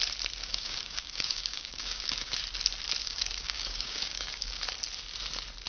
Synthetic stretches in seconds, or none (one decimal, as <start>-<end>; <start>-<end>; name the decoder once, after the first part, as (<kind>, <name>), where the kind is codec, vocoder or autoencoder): 0.4-2.4 (codec, DAC); 3.0-4.6